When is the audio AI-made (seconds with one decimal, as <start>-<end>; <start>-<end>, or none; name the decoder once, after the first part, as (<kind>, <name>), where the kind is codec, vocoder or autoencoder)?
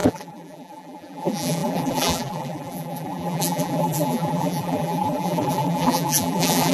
0.0-6.7 (vocoder, BigVGAN v2)